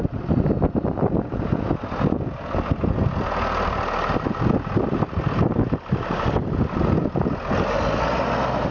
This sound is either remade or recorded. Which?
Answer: recorded